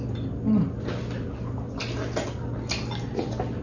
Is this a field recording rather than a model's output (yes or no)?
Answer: yes